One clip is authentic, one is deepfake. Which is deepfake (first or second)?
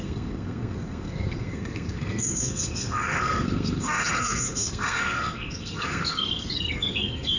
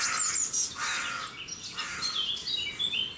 first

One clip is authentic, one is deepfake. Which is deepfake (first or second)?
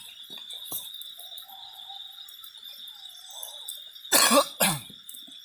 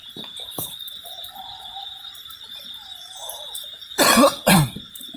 second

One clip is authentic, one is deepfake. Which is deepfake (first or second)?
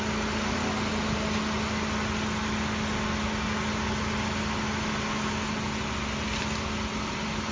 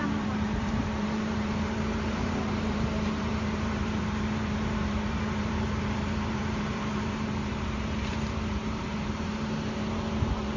second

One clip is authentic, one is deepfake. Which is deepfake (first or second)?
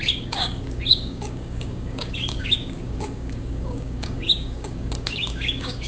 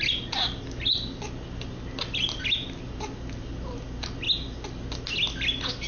first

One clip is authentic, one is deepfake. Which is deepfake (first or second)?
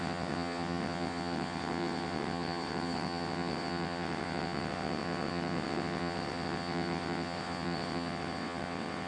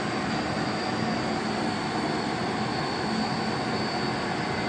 first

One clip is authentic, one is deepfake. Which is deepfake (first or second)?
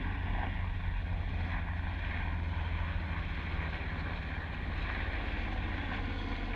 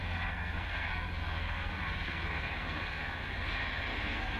second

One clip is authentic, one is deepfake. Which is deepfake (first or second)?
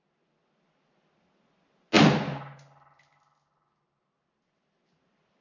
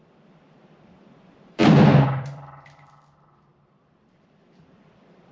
second